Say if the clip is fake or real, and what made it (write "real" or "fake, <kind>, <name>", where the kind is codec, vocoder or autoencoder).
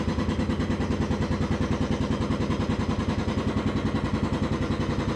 real